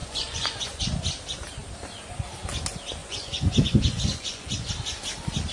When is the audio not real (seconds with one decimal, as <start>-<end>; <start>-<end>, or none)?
0.0-0.8; 3.0-4.7

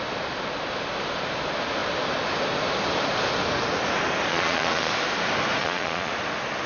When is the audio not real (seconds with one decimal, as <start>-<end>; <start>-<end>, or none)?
4.3-4.9; 5.6-6.1

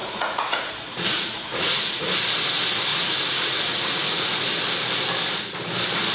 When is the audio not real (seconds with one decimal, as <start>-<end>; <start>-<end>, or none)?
0.0-2.2; 2.9-4.4

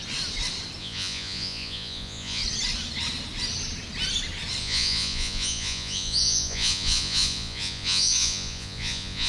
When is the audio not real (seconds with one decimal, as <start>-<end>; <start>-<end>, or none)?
0.8-2.4; 4.6-9.3

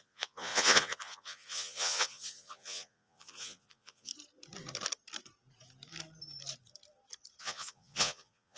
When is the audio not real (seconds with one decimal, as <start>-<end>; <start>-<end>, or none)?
0.0-4.1; 7.4-8.6